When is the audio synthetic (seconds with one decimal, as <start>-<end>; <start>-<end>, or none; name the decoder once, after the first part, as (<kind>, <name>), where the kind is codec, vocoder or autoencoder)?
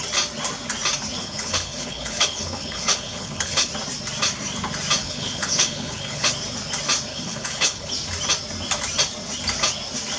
1.2-3.7 (codec, HILCodec); 5.0-6.3; 7.1-7.9